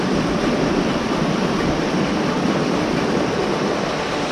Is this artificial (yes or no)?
yes